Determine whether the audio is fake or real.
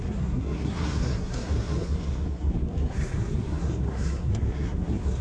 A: fake